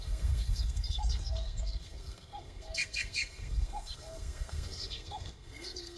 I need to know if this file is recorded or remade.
remade